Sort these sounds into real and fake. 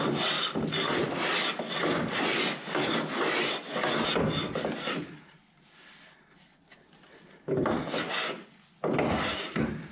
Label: real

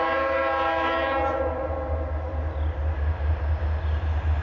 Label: real